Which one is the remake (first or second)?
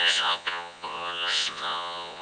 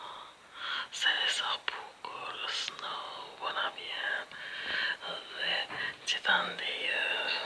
first